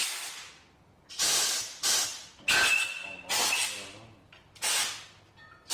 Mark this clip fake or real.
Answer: real